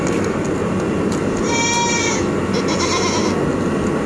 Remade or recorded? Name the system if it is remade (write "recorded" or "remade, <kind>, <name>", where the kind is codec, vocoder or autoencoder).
recorded